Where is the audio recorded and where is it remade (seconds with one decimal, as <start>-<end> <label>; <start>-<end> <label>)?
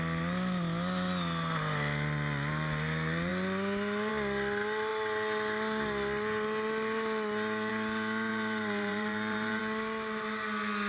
0.0-8.3 recorded; 8.3-9.6 remade; 9.6-10.9 recorded